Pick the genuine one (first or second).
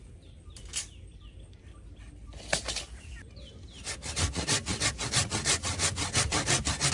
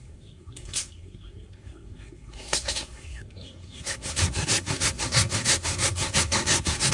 first